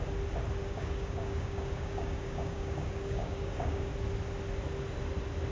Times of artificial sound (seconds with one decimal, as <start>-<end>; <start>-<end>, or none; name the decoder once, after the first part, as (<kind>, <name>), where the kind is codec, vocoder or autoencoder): 0.6-3.9 (codec, DAC)